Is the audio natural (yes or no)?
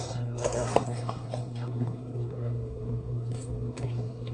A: no